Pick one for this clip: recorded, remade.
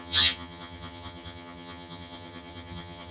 remade